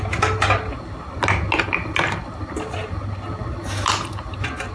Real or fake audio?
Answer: real